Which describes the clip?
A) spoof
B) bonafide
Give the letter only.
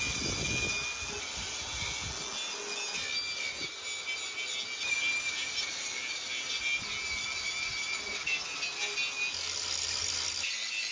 B